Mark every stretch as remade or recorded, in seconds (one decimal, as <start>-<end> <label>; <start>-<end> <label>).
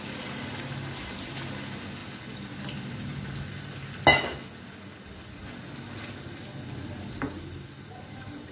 0.0-8.5 recorded